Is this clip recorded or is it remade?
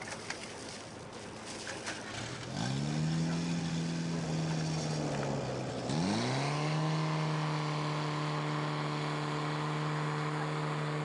recorded